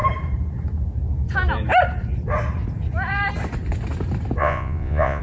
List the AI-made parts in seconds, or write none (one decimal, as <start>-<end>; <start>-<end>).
4.4-5.2